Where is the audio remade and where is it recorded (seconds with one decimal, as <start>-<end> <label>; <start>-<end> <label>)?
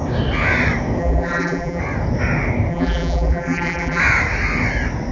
0.0-1.0 recorded; 1.0-1.8 remade; 1.8-2.7 recorded; 2.7-4.0 remade; 4.0-5.1 recorded